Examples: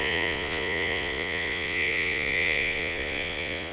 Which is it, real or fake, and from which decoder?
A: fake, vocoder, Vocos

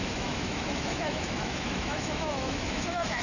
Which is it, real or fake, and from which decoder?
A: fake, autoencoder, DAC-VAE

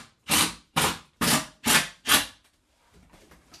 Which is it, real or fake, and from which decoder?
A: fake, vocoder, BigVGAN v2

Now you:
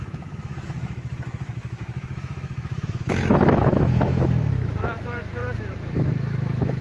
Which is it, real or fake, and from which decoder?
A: fake, autoencoder, DAC-VAE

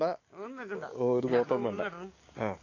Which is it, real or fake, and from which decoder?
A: fake, codec, DAC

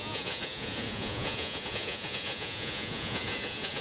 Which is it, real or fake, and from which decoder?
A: fake, vocoder, Vocos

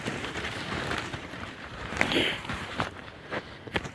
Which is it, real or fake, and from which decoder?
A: fake, vocoder, BigVGAN v2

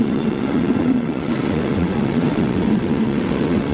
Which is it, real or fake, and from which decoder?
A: fake, vocoder, WaveNeXt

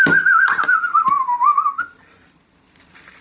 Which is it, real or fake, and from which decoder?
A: real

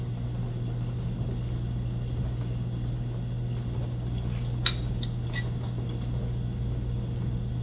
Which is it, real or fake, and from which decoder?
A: real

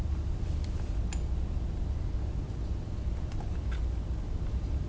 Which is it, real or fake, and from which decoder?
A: real